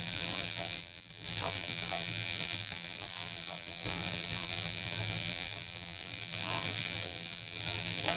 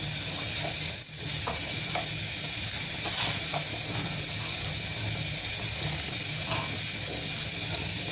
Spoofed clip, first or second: first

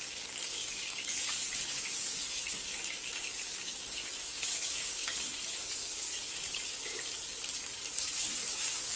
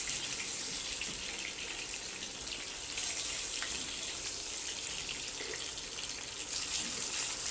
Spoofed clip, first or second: first